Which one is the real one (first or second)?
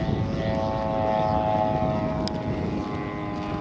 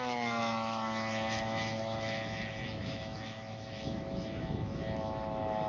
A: first